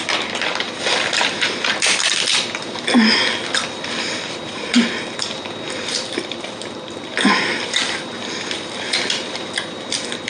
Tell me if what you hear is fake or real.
fake